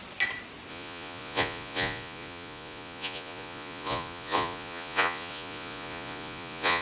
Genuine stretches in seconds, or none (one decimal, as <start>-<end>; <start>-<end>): 0.0-0.7